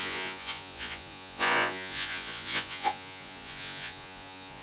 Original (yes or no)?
no